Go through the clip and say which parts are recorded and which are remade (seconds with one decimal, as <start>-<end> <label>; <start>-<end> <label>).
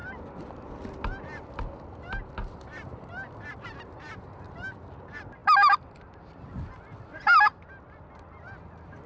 0.0-9.1 recorded